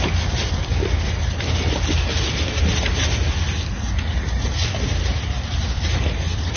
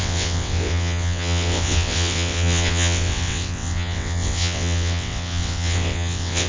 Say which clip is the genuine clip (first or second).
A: first